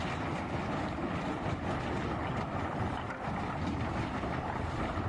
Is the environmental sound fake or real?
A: real